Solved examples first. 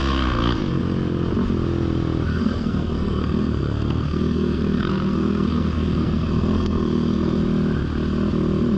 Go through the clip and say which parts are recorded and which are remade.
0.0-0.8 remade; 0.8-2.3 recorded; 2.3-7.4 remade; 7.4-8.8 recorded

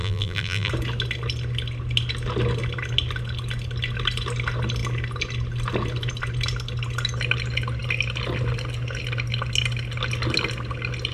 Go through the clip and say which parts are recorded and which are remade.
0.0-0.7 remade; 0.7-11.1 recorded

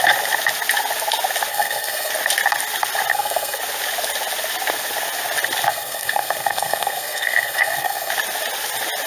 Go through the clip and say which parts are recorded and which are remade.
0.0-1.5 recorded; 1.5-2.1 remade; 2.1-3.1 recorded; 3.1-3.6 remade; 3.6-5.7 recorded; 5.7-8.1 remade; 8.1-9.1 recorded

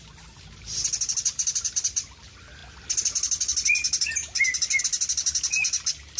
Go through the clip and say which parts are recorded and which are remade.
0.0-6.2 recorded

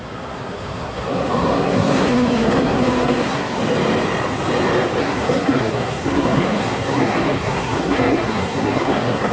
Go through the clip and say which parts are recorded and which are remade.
0.0-3.6 remade; 3.6-5.0 recorded; 5.0-9.3 remade

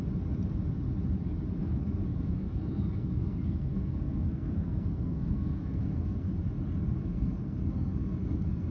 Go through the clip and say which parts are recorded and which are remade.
0.0-1.6 recorded; 1.6-6.3 remade; 6.3-7.0 recorded; 7.0-8.7 remade